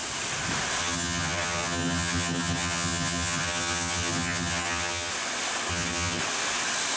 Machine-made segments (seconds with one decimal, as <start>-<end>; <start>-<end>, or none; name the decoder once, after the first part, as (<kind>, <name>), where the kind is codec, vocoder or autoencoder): 0.8-5.1 (vocoder, HiFi-GAN); 5.7-6.2